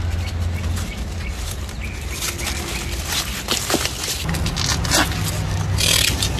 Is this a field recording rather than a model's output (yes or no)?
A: yes